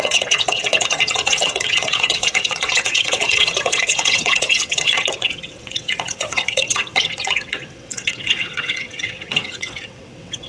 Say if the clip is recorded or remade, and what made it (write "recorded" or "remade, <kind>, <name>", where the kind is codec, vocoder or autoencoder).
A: remade, vocoder, WaveNeXt